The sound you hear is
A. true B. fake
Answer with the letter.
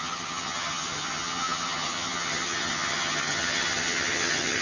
B